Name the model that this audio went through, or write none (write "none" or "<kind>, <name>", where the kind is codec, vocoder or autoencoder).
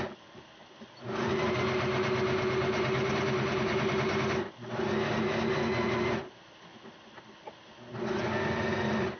none